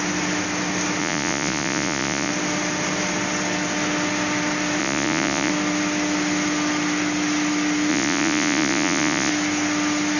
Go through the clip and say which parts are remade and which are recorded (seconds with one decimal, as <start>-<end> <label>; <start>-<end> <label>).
0.0-1.0 recorded; 1.0-2.3 remade; 2.3-4.8 recorded; 4.8-5.5 remade; 5.5-7.9 recorded; 7.9-9.3 remade; 9.3-10.2 recorded